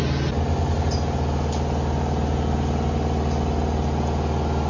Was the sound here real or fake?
real